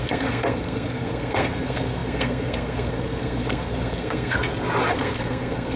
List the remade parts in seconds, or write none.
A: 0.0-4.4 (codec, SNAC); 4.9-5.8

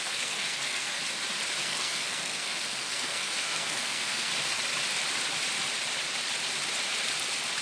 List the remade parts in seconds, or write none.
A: 0.0-1.0 (codec, SNAC); 1.6-4.3

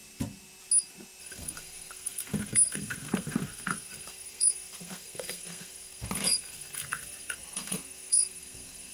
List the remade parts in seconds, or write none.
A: 1.2-8.9 (codec, SNAC)